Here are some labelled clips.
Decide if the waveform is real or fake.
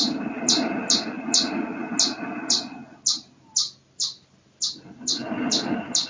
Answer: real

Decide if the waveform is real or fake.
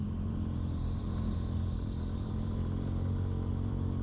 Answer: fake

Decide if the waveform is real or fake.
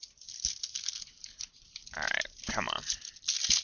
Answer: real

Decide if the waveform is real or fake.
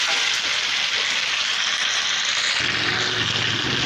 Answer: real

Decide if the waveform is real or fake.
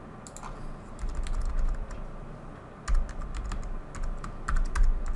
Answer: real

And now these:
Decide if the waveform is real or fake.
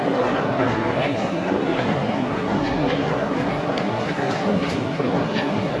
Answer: fake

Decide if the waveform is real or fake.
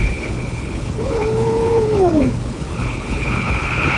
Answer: fake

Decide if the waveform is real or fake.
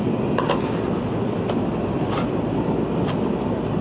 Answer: real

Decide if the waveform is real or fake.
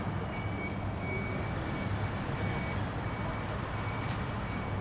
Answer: real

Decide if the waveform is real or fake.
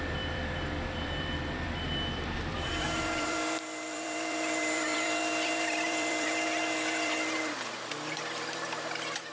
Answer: fake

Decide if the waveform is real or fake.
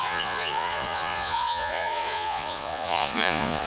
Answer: fake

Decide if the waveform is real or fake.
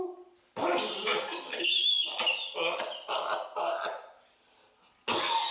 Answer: real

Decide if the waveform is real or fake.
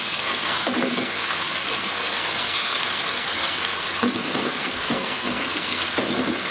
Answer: fake